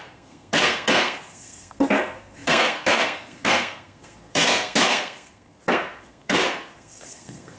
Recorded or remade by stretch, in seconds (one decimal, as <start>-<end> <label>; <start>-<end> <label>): 0.0-7.6 remade